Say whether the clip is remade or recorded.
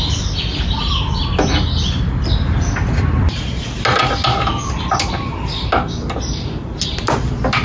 recorded